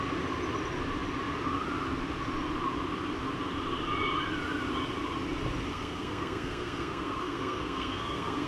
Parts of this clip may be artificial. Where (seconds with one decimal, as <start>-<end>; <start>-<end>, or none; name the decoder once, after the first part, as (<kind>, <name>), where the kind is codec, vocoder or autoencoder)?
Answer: 5.7-8.5 (codec, SNAC)